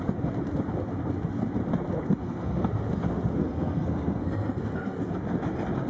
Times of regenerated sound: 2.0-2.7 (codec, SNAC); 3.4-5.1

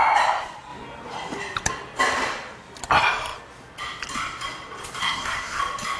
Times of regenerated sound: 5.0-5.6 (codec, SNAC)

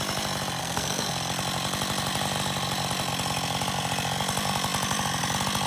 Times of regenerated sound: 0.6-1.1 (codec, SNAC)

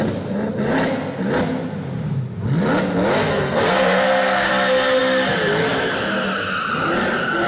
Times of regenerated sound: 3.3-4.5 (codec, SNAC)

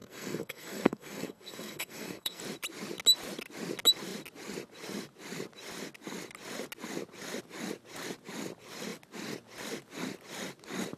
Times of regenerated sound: 0.0-2.4 (codec, SNAC)

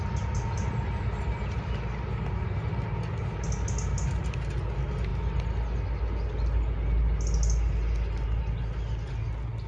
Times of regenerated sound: none

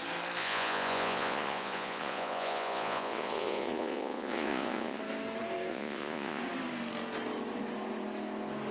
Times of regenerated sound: 0.4-5.0 (vocoder, Vocos); 5.7-6.4

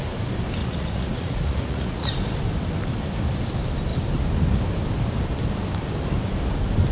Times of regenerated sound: 0.6-2.1 (vocoder, Vocos)